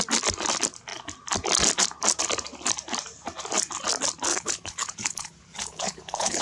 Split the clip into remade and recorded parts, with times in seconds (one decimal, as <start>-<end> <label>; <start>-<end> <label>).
0.0-4.3 recorded; 4.3-6.4 remade